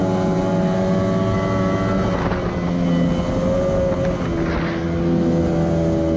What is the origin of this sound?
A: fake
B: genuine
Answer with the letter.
B